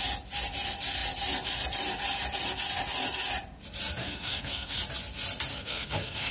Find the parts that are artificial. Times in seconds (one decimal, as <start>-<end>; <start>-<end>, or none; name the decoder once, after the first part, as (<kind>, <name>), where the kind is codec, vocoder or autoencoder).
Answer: 4.0-4.8 (codec, SNAC); 5.5-6.3